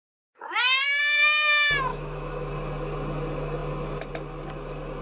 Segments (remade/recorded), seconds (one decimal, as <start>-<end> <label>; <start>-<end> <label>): 0.0-1.9 recorded; 1.9-2.5 remade; 2.5-5.0 recorded